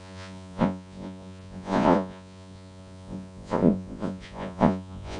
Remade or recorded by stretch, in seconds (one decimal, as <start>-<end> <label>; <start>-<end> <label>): 0.0-5.2 remade